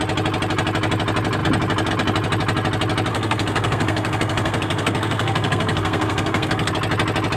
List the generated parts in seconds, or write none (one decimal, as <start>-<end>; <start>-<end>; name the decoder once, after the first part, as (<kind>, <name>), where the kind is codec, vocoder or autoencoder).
3.1-6.7 (codec, SNAC)